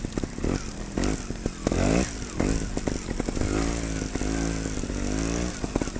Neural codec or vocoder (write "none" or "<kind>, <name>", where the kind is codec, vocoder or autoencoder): none